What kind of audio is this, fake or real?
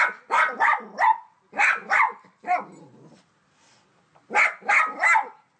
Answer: real